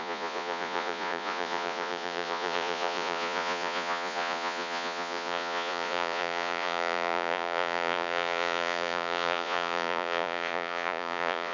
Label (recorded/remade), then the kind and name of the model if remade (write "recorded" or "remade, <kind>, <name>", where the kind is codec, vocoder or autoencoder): remade, vocoder, Vocos